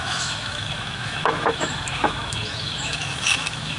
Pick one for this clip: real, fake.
fake